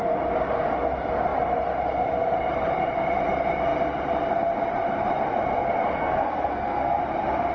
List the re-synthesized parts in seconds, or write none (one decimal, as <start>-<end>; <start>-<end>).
6.0-7.0